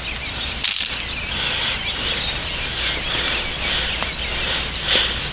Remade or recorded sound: recorded